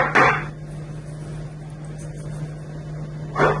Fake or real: real